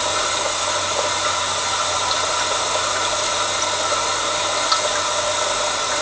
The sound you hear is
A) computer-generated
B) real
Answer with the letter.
B